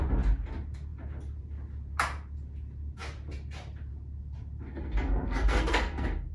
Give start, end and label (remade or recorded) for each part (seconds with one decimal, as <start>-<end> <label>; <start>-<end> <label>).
0.0-4.7 recorded; 4.7-6.3 remade